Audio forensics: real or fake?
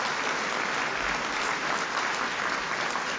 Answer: real